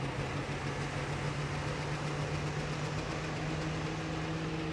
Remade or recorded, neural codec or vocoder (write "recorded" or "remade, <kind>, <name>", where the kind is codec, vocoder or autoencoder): recorded